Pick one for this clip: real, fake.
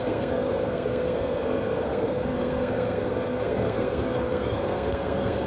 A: fake